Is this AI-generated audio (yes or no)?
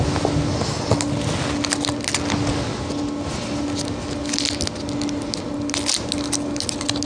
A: no